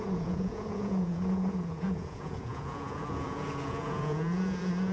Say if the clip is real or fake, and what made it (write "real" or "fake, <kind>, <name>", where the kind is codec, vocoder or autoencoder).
fake, vocoder, Vocos